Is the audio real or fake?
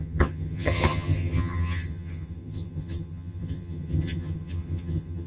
fake